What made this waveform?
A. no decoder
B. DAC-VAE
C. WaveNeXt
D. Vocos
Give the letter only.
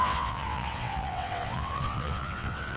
C